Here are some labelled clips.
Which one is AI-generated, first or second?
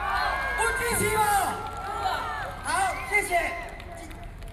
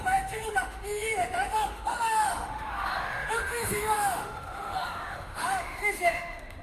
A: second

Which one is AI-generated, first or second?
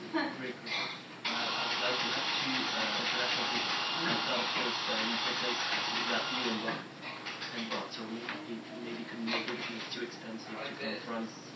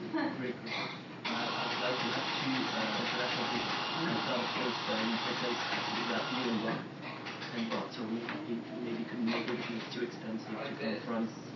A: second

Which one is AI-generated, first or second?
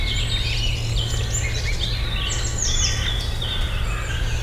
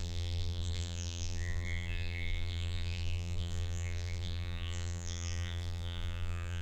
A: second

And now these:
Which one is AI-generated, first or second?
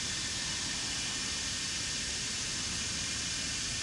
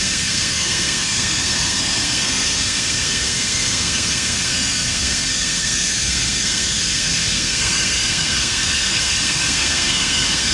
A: second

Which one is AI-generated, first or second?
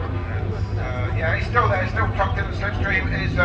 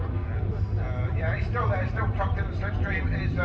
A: second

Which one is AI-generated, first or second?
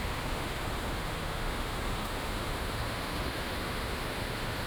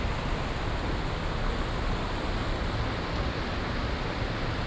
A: first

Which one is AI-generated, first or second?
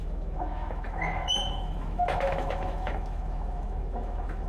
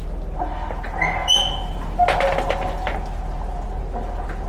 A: first